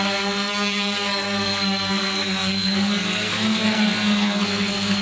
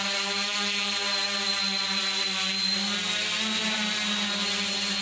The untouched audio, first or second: second